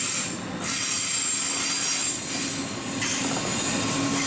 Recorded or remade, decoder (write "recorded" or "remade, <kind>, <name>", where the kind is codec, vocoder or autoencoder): recorded